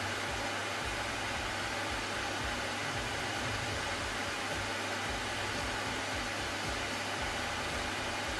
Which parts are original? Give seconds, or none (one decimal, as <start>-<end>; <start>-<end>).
0.0-0.6; 1.2-8.4